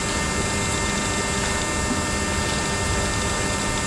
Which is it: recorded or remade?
recorded